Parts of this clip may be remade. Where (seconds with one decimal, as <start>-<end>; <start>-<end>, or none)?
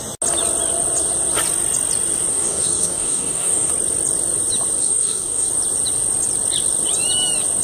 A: 2.3-3.7; 4.8-5.5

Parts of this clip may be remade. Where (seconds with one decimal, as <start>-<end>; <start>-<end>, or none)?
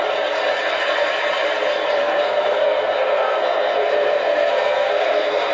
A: 2.0-5.5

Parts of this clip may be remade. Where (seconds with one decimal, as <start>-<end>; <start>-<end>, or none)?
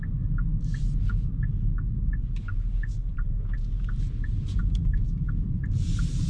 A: 0.5-1.3; 2.5-6.3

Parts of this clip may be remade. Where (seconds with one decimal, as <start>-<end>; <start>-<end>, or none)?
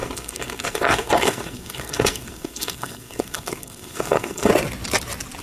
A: 0.0-4.5